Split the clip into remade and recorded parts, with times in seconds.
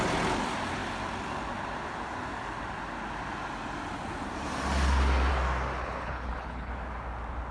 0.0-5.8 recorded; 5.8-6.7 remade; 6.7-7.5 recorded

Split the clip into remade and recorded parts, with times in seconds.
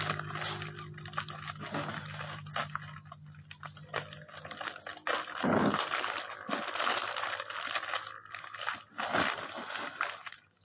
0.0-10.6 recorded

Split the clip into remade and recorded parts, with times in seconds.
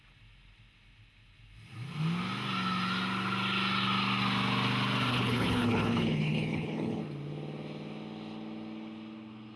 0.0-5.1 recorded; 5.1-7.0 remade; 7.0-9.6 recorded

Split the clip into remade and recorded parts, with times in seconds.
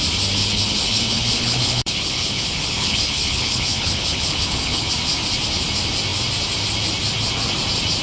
0.0-0.4 recorded; 0.4-4.9 remade; 4.9-8.0 recorded